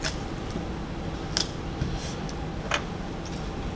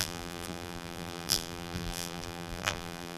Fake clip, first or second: second